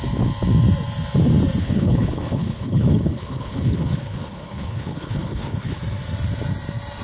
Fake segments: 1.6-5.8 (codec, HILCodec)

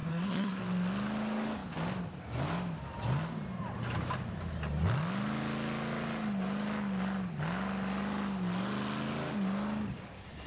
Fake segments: 0.0-0.6 (codec, SNAC)

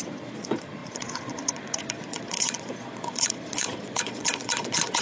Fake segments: 0.0-5.0 (vocoder, Vocos)

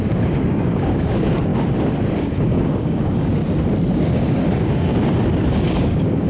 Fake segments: 0.0-1.5 (codec, DAC); 2.2-3.4; 3.9-4.9; 5.5-6.3

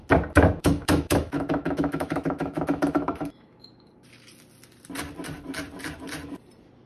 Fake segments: 0.6-3.9 (autoencoder, DAC-VAE)

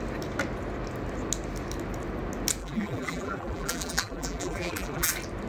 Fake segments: 2.6-5.1 (vocoder, BigVGAN v2)

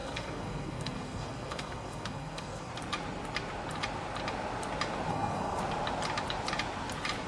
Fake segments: 0.0-2.7 (codec, SNAC); 5.1-5.6